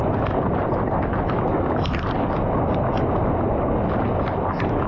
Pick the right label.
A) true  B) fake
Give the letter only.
A